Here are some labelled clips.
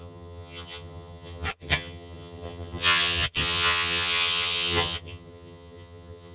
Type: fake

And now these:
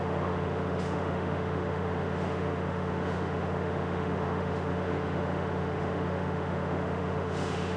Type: fake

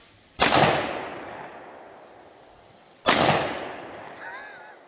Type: real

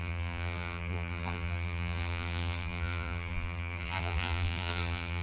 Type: fake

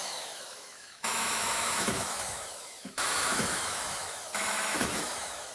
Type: fake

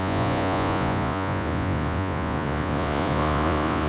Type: fake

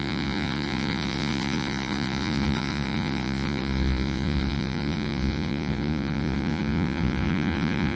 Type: fake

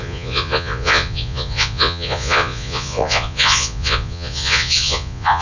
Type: fake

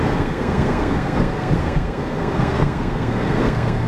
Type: fake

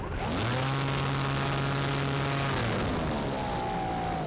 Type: real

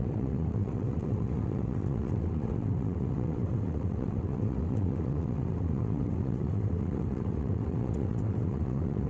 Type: fake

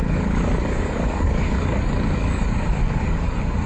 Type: fake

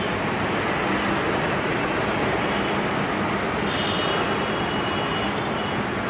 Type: real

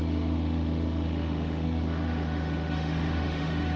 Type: fake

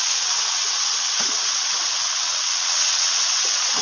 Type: fake